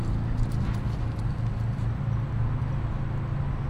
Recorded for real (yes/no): yes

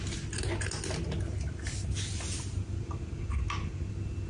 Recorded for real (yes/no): yes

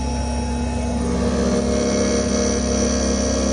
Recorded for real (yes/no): yes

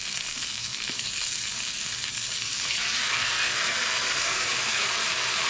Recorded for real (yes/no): no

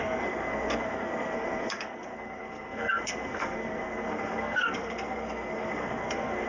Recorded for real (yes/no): no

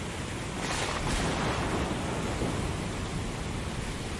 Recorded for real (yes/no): yes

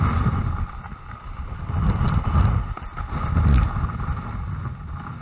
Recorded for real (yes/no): yes